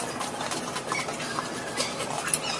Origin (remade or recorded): recorded